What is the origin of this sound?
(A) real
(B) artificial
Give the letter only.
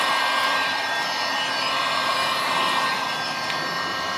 B